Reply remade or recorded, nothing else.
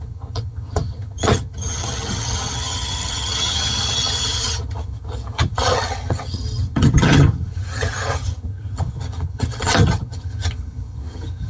remade